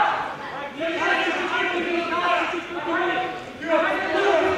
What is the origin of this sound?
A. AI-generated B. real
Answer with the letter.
A